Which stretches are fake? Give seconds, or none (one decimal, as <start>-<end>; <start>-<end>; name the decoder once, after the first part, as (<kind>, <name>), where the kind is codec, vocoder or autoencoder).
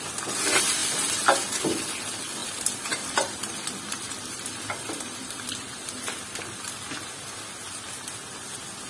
2.4-6.4 (vocoder, BigVGAN v2)